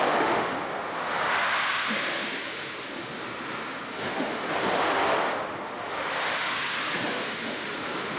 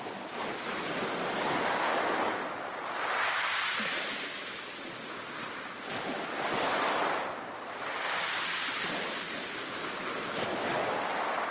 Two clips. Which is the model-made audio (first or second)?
first